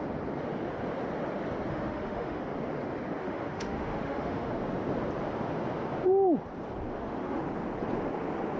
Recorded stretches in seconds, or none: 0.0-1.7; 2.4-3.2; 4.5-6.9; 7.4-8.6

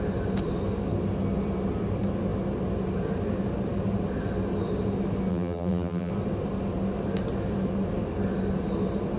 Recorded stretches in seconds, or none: 0.0-5.3; 6.1-9.2

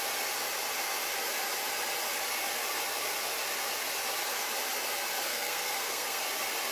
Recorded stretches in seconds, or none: 0.0-5.2; 6.2-6.7

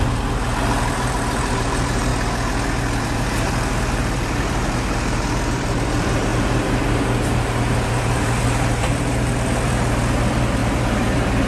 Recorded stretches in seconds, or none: 2.1-3.0

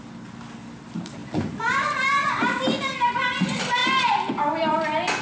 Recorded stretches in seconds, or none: 0.0-5.2

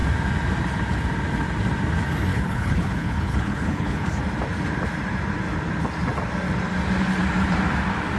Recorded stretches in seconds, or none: 0.0-2.3; 4.2-8.2

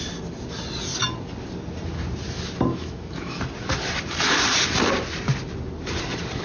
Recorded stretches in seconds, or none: 0.0-2.7; 3.4-6.4

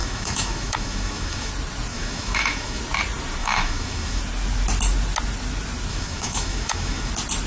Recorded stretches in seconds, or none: 1.5-1.9; 2.8-3.4; 4.2-5.9; 7.1-7.5